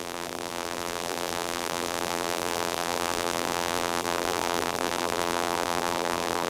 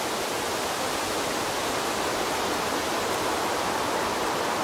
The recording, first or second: second